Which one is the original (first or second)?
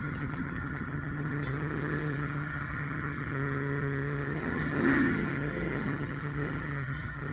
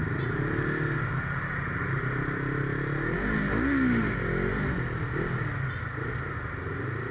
second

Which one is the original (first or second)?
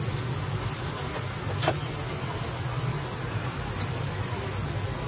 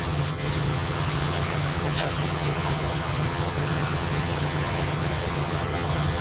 first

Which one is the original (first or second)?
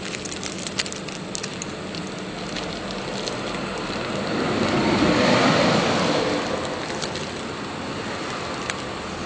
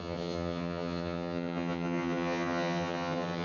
first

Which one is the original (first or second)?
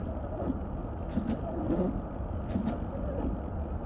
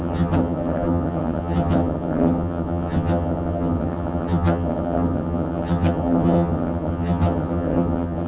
first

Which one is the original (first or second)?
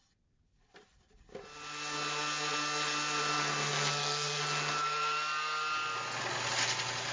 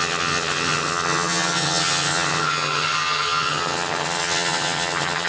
first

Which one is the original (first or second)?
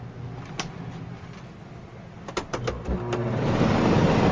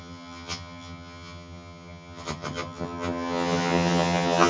first